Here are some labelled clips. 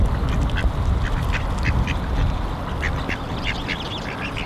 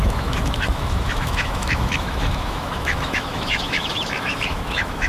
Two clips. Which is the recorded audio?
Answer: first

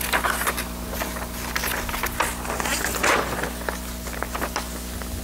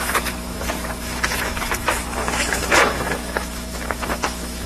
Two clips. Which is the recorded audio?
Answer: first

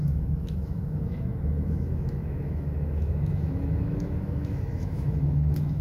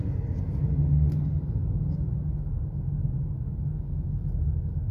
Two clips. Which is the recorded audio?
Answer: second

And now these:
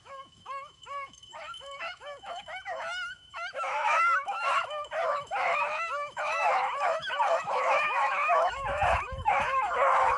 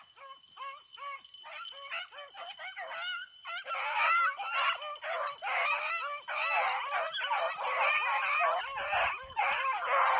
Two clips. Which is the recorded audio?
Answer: second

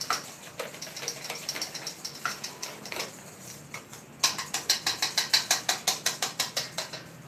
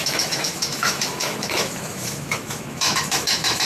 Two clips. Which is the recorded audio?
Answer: first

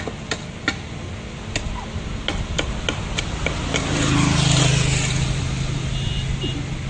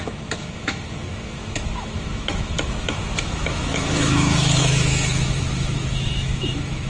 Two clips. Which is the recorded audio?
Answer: first